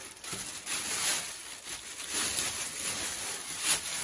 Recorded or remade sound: recorded